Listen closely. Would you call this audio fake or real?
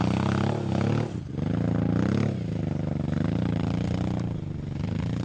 real